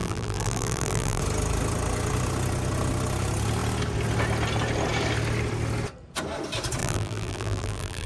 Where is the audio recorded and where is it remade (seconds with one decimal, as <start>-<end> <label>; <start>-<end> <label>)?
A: 0.0-1.2 remade; 1.2-6.8 recorded; 6.8-8.1 remade